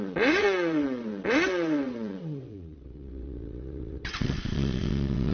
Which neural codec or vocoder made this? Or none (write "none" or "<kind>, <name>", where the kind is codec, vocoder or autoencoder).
vocoder, WaveNeXt